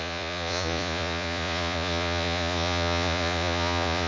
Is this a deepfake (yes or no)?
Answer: yes